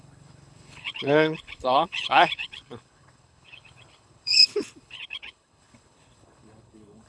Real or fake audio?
fake